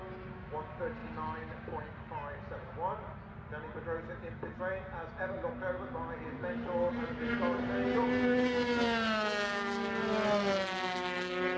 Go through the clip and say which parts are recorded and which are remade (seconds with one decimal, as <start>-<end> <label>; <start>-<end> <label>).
0.0-11.6 recorded